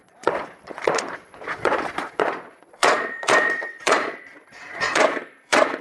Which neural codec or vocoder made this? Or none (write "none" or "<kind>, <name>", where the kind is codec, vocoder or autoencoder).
vocoder, Vocos